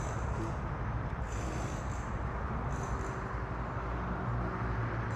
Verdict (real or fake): real